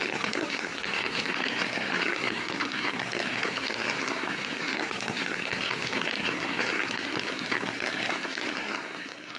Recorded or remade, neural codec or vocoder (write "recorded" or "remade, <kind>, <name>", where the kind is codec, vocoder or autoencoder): remade, codec, SNAC